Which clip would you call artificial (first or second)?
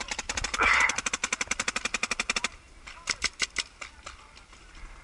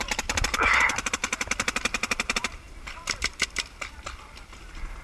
second